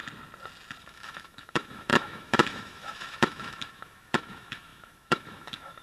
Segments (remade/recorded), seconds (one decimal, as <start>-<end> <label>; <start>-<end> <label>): 0.0-0.8 recorded; 0.8-5.8 remade